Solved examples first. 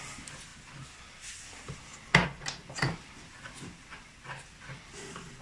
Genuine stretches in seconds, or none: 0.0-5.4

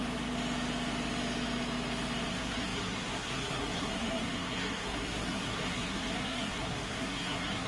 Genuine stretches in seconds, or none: 0.0-2.3

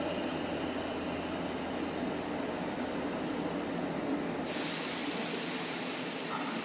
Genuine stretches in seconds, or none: 0.0-6.6

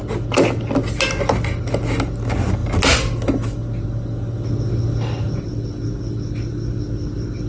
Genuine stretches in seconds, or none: 0.0-7.5

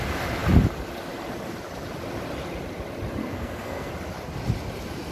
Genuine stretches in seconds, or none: 0.0-3.2; 3.9-5.1

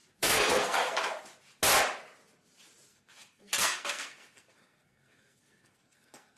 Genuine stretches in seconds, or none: 1.1-2.9

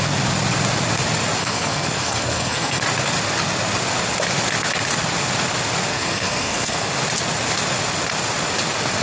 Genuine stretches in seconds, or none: 0.0-1.4; 2.8-5.9; 6.9-9.0

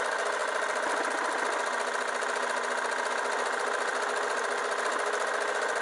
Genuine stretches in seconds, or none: 0.0-5.8